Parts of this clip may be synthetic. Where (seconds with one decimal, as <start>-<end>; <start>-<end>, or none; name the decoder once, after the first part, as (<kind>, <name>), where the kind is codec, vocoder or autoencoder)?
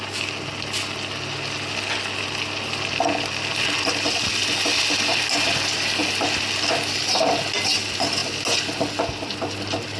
none